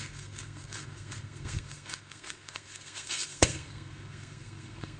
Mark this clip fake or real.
fake